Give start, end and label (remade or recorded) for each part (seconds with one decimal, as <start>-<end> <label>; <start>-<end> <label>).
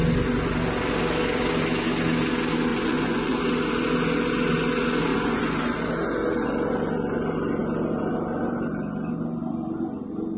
0.0-2.7 recorded; 2.7-3.4 remade; 3.4-5.1 recorded; 5.1-5.9 remade; 5.9-10.4 recorded